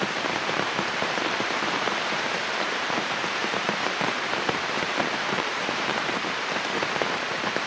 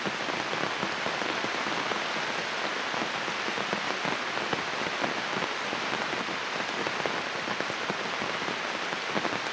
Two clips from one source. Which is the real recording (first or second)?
second